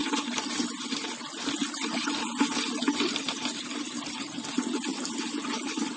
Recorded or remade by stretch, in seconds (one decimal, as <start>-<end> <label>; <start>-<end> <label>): 0.0-6.0 recorded